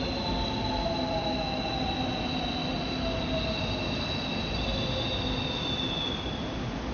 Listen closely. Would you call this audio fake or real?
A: real